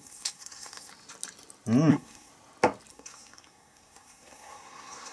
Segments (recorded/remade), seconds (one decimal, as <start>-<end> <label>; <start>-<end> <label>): 0.0-0.9 remade; 0.9-1.9 recorded; 1.9-2.3 remade; 2.3-2.9 recorded; 2.9-5.1 remade